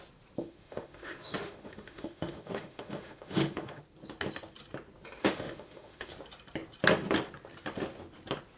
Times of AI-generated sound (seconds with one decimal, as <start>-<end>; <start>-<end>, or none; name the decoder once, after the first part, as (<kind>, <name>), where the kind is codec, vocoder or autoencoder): 0.4-3.8 (autoencoder, DAC-VAE); 5.2-6.1